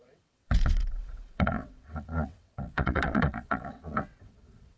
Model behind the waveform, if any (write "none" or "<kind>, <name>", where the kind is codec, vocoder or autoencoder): vocoder, WaveNeXt